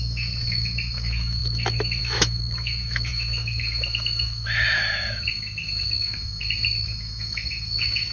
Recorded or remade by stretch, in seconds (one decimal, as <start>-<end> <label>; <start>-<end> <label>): 0.0-8.1 remade